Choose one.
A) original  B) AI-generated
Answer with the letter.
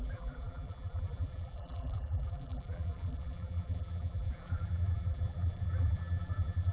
B